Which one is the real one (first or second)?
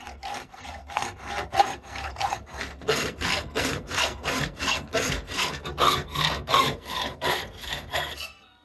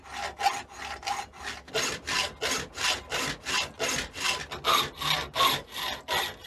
second